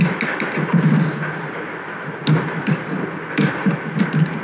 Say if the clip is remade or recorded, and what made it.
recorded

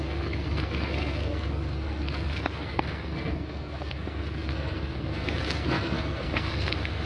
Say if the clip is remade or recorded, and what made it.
remade, codec, SNAC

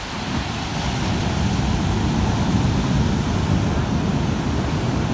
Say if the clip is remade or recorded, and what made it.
recorded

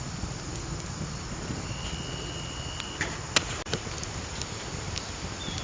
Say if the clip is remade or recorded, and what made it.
recorded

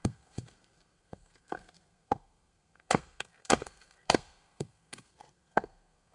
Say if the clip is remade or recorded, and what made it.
remade, codec, SNAC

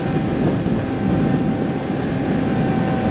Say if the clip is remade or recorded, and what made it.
recorded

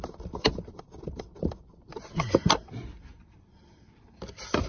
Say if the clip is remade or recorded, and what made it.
remade, vocoder, BigVGAN v2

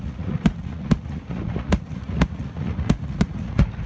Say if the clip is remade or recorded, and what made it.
remade, vocoder, Vocos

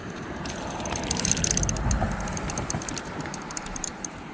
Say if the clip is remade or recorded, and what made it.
remade, vocoder, BigVGAN v2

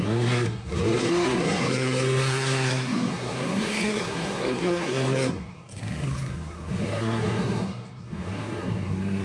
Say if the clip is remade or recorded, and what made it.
remade, codec, SNAC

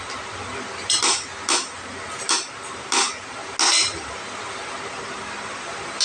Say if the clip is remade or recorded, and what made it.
recorded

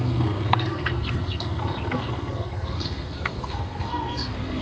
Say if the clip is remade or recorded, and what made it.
remade, codec, SNAC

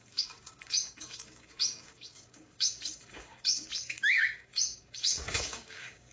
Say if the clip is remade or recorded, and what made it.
remade, codec, DAC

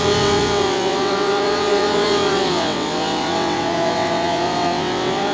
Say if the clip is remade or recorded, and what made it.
remade, vocoder, WaveNeXt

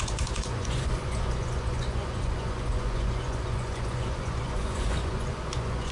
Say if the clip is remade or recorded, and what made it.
remade, vocoder, Vocos